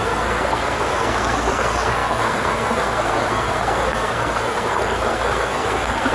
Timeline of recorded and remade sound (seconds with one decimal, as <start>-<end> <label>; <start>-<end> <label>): 0.0-6.1 remade